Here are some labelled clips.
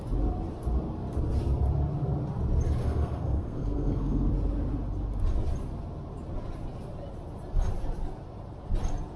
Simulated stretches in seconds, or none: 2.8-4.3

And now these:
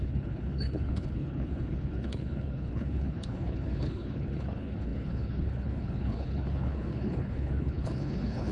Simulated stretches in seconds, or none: 0.0-8.5

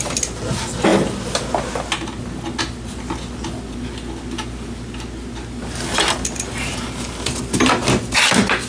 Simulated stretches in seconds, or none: none

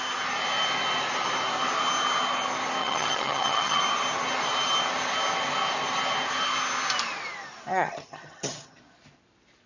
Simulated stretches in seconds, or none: 2.8-3.8; 7.7-8.8

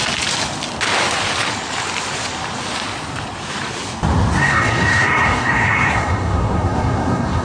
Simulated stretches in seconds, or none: 4.4-7.4

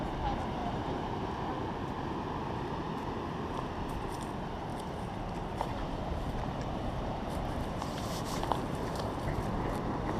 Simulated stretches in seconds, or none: 0.6-1.5; 4.7-9.2